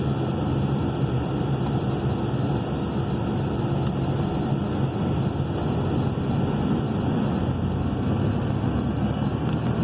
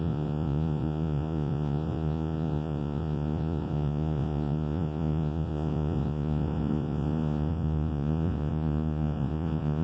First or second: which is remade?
second